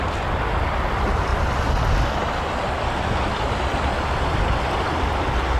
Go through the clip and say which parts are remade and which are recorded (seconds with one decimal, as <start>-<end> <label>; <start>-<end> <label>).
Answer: 0.0-5.6 recorded